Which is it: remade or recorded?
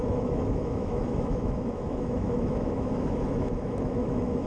remade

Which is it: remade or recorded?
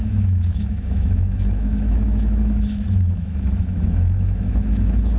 remade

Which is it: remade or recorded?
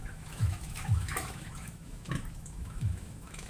remade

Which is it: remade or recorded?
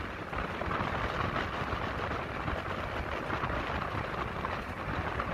recorded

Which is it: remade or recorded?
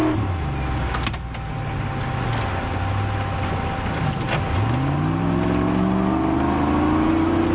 recorded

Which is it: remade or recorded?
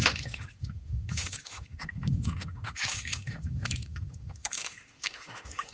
remade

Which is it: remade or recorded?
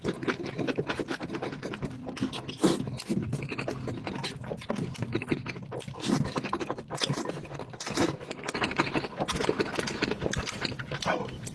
recorded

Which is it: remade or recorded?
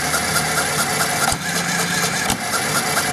recorded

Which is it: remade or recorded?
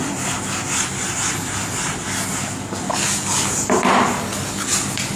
recorded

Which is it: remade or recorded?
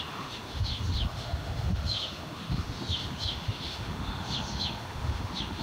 remade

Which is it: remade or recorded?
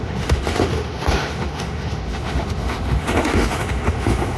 remade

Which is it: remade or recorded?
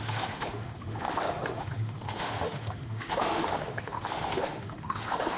remade